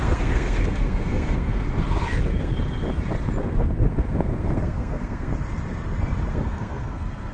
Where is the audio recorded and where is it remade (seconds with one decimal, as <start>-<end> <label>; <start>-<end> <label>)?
0.0-2.5 remade; 2.5-3.4 recorded; 3.4-5.3 remade; 5.3-6.3 recorded; 6.3-7.3 remade